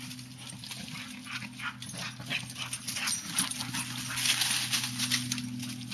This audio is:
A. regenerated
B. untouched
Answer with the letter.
B